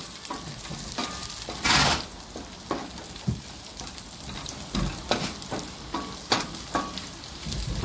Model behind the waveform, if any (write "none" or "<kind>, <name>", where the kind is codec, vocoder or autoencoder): none